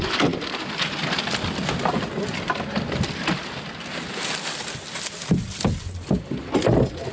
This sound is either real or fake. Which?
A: real